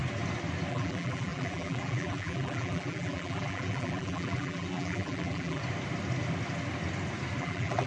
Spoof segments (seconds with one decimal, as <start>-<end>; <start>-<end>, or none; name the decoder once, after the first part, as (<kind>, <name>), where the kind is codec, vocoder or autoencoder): 0.7-5.6 (vocoder, BigVGAN v2); 7.4-7.9